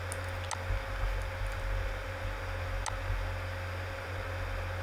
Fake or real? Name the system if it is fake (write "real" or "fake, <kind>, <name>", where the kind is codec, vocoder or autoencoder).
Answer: real